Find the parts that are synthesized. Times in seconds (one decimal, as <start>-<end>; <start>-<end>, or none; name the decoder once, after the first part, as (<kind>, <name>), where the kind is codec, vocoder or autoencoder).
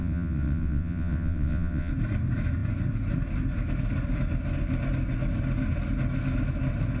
0.0-1.9 (vocoder, WaveNeXt)